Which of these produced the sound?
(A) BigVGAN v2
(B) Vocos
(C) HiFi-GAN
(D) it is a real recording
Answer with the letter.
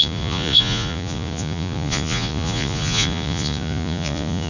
B